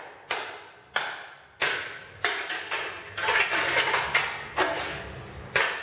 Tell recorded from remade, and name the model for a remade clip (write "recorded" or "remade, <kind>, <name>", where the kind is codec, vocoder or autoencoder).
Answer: recorded